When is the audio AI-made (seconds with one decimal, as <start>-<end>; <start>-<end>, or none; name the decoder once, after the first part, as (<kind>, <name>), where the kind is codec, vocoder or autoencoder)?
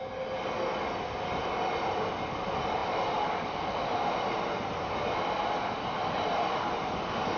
none